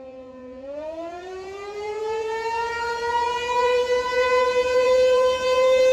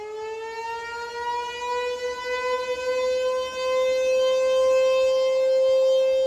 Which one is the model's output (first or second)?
first